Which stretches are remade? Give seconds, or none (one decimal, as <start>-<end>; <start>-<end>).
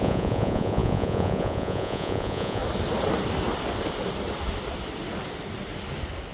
0.0-2.6